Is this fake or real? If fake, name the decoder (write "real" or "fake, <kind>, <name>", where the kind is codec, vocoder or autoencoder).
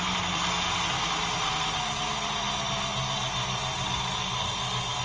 real